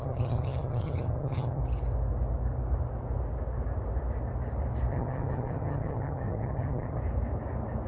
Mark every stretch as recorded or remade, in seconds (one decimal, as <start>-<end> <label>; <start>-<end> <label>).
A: 0.0-1.6 remade; 1.6-4.9 recorded; 4.9-7.0 remade; 7.0-7.9 recorded